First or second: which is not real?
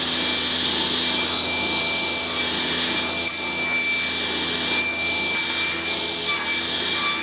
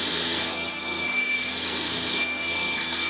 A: second